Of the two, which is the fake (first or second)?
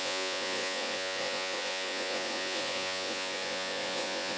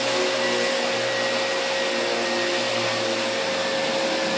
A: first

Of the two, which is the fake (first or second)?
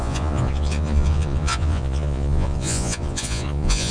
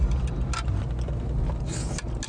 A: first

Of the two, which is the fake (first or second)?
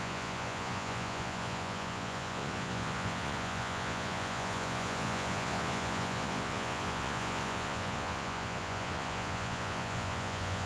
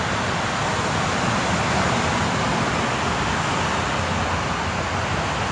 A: first